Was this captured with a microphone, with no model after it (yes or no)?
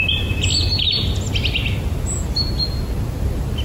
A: yes